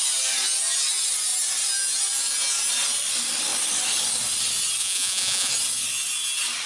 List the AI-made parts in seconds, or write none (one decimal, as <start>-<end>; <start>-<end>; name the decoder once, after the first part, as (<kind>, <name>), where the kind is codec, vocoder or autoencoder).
4.8-5.5 (vocoder, Vocos)